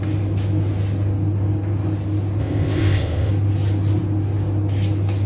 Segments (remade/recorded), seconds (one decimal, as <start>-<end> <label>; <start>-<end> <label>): 0.0-2.4 recorded; 2.4-3.3 remade; 3.3-5.3 recorded